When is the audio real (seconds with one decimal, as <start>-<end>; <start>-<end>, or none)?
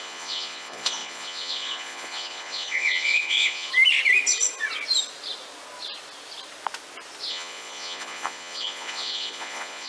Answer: 3.7-7.3